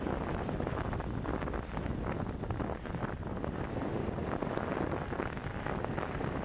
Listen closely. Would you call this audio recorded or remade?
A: recorded